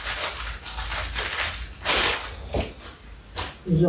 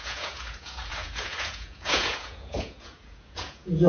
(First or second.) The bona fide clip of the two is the first